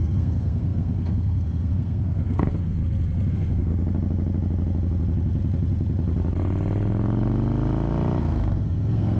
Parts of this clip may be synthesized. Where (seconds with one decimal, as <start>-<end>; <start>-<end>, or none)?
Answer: 0.0-2.8; 3.3-3.7; 8.2-9.2